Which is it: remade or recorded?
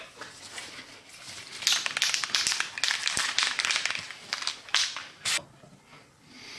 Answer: recorded